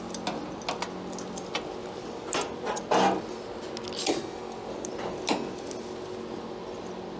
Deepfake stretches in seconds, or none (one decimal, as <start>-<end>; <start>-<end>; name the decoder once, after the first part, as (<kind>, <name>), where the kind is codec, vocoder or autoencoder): none